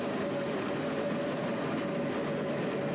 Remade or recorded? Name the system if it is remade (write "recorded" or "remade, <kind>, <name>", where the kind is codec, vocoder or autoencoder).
recorded